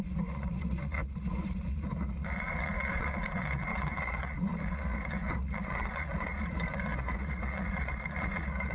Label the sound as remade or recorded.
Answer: remade